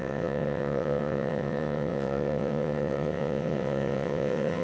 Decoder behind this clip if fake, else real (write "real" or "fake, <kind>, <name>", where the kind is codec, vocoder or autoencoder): fake, vocoder, WaveNeXt